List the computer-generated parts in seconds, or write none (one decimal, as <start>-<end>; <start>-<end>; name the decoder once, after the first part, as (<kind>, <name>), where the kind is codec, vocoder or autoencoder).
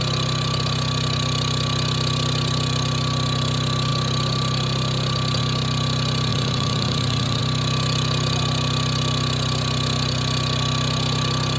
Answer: 6.3-7.4 (vocoder, Vocos)